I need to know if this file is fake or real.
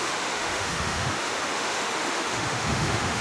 fake